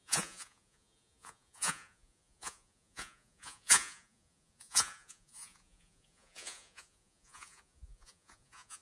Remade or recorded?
remade